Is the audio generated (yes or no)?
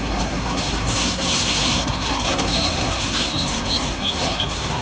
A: yes